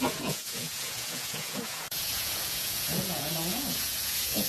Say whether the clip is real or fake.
fake